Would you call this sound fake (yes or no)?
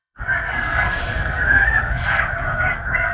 yes